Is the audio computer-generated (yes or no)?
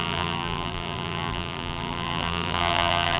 yes